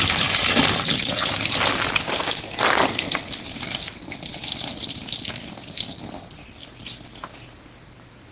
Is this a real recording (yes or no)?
yes